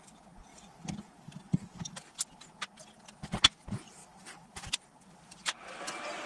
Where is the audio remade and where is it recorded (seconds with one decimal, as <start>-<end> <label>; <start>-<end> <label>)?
0.0-0.5 recorded; 0.5-2.2 remade; 2.2-4.0 recorded; 4.0-5.8 remade; 5.8-6.3 recorded